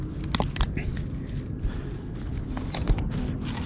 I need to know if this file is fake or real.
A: real